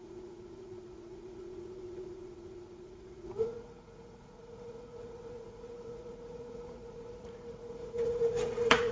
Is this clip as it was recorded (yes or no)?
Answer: no